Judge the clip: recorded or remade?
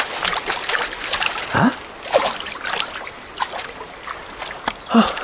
recorded